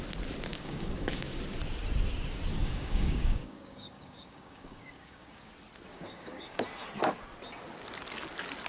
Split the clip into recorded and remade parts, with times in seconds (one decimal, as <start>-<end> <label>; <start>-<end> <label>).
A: 0.0-0.5 recorded; 0.5-1.4 remade; 1.4-2.5 recorded; 2.5-5.5 remade; 5.5-5.9 recorded; 5.9-6.6 remade; 6.6-8.7 recorded